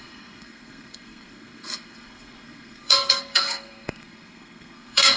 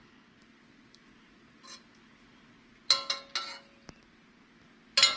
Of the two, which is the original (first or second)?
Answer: second